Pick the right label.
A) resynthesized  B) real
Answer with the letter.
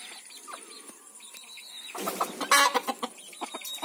B